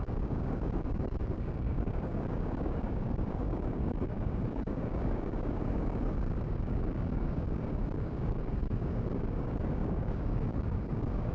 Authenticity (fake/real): fake